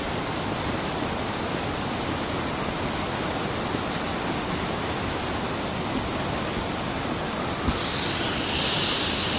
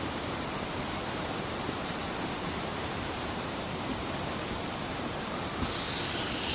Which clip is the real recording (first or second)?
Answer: first